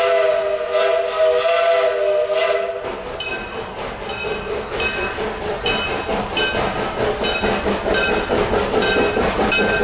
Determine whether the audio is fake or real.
real